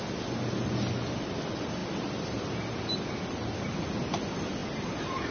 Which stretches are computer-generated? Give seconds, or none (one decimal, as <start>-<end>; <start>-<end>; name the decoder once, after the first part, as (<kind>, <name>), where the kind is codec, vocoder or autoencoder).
none